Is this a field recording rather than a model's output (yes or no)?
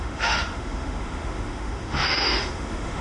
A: no